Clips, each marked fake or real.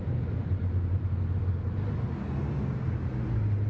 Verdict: real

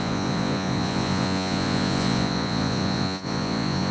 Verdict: fake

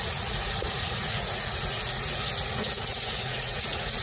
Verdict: fake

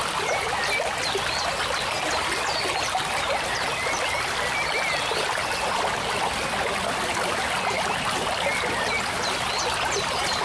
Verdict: real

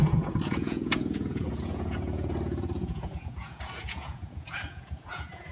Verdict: fake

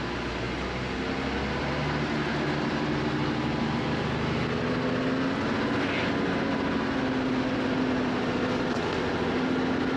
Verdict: real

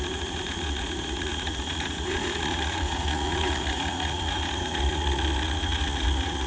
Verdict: fake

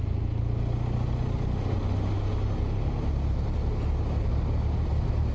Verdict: real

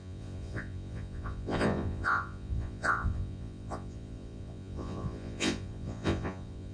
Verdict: fake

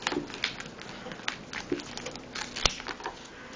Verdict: real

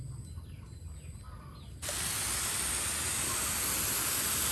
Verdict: real